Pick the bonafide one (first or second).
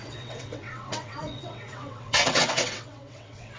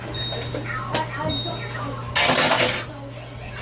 second